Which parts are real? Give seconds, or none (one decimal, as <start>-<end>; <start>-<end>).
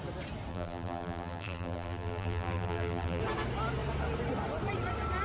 0.0-0.5; 3.2-5.2